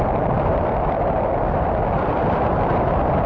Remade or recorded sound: recorded